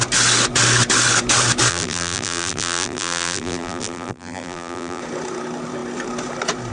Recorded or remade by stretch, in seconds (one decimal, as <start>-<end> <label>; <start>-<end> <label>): 0.0-1.7 recorded; 1.7-5.0 remade; 5.0-6.7 recorded